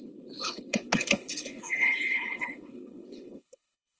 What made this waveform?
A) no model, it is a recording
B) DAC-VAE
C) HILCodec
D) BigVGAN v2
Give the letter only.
C